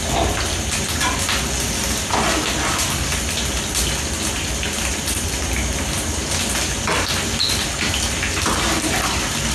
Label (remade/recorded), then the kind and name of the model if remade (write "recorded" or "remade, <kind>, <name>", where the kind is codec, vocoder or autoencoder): recorded